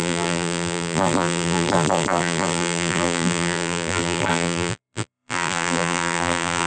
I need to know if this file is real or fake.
fake